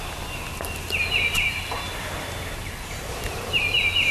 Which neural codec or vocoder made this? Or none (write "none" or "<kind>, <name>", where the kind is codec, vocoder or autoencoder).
none